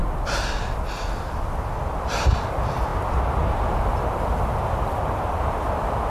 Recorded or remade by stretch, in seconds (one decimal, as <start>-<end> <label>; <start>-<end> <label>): 0.0-6.1 recorded